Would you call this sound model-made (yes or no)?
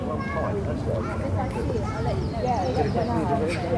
no